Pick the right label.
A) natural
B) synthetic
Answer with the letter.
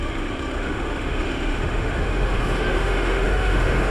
B